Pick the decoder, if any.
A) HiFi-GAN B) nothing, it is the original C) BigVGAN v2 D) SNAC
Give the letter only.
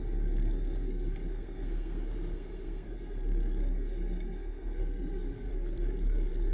D